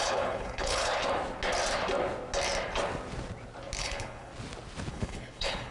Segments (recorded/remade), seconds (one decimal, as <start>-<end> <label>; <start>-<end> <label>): 0.0-0.9 remade; 0.9-3.8 recorded; 3.8-4.3 remade; 4.3-4.9 recorded; 4.9-5.7 remade